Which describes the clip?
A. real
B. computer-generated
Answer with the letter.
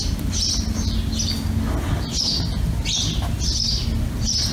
A